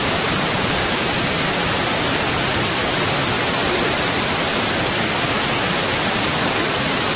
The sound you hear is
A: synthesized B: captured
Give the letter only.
B